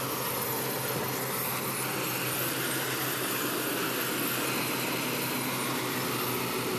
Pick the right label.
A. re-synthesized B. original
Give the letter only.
B